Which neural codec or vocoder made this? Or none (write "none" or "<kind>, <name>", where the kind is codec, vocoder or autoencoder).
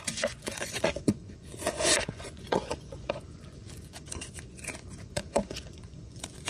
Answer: vocoder, Vocos